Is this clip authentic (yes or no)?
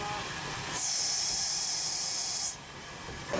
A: yes